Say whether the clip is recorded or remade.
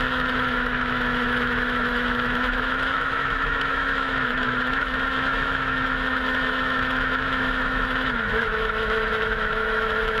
remade